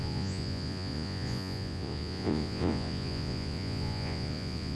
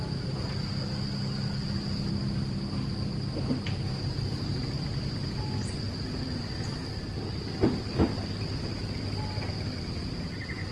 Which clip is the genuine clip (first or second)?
second